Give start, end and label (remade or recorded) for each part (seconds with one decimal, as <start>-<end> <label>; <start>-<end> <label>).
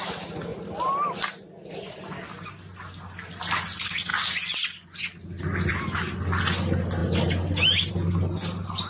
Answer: 0.0-8.9 recorded